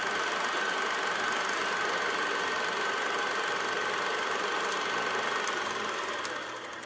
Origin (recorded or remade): recorded